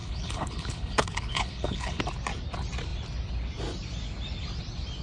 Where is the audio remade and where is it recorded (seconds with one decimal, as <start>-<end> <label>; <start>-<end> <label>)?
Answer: 0.0-2.0 remade; 2.0-5.0 recorded